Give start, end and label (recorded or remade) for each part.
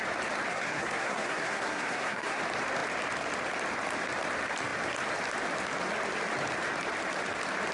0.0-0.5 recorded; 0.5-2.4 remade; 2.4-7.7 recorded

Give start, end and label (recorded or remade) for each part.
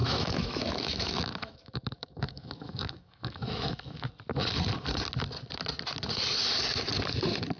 0.0-4.1 remade; 4.1-7.6 recorded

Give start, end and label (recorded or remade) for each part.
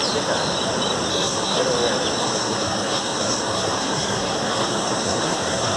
0.0-1.1 recorded; 1.1-1.6 remade; 1.6-2.2 recorded; 2.2-5.8 remade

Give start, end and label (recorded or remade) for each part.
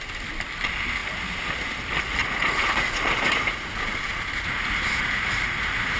0.0-2.2 recorded; 2.2-6.0 remade